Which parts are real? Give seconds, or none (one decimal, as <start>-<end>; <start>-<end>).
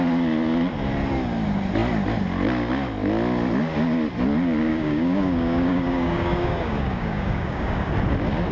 0.0-4.7; 7.9-8.5